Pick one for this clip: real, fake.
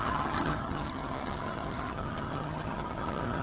fake